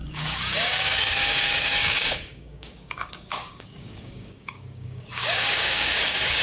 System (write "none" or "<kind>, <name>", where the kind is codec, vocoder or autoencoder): codec, DAC